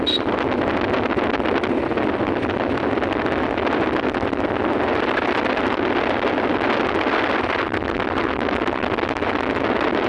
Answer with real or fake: real